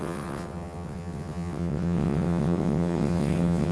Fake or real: fake